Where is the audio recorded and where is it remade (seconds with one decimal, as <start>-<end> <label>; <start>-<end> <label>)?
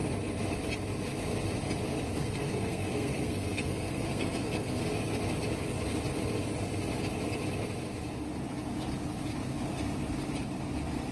0.0-2.2 recorded; 2.2-4.8 remade; 4.8-11.1 recorded